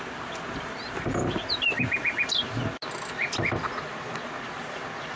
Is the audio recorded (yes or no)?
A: yes